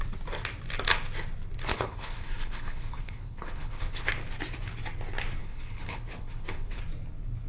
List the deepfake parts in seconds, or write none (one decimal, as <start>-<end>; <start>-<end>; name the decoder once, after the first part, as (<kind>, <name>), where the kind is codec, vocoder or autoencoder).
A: 1.7-4.1 (codec, HILCodec); 5.4-6.8